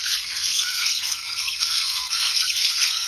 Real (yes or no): no